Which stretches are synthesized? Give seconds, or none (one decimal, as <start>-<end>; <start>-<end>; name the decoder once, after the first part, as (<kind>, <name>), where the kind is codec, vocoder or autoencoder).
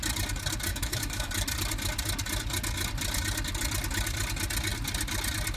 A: 0.7-1.3 (autoencoder, DAC-VAE)